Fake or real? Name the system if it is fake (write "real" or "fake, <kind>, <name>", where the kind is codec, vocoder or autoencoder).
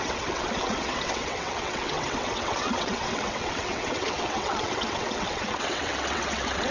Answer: fake, vocoder, WaveNeXt